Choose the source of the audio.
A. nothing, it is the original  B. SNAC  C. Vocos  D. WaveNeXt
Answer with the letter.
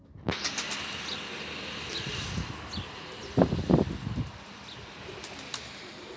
A